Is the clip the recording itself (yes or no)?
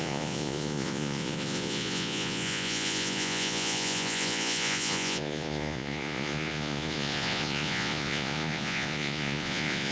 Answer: no